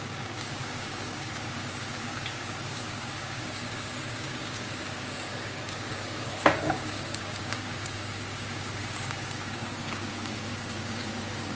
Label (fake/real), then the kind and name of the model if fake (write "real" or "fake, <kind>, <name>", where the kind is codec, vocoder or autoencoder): fake, codec, DAC